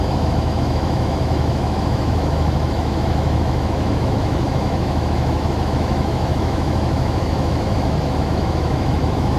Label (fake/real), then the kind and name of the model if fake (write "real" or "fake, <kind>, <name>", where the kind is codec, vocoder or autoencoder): fake, autoencoder, DAC-VAE